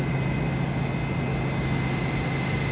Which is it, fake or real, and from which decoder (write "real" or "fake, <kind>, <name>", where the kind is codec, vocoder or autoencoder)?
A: real